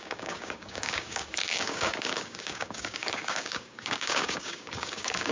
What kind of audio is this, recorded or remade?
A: remade